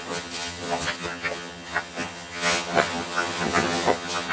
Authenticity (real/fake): fake